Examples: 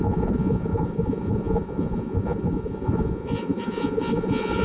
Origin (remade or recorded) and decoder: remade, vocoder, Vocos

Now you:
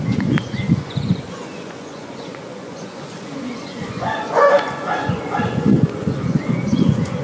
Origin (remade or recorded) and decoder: remade, vocoder, Vocos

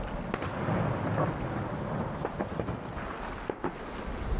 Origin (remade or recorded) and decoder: recorded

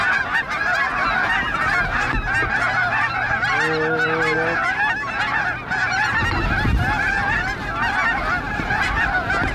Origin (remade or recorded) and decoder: recorded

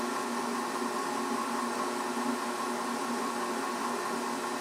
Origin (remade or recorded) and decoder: recorded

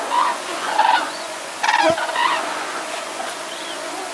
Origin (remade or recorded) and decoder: remade, vocoder, Vocos